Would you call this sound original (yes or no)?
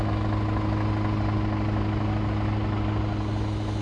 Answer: yes